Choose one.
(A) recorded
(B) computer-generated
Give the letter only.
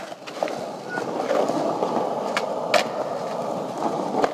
A